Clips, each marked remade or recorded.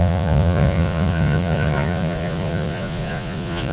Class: remade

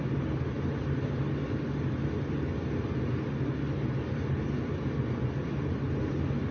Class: recorded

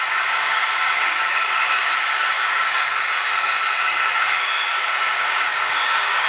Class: remade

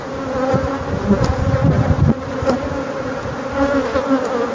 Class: recorded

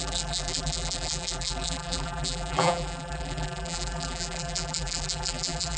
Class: remade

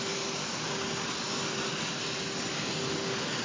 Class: recorded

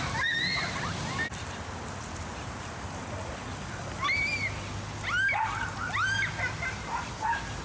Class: recorded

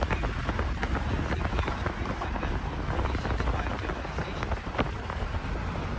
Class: recorded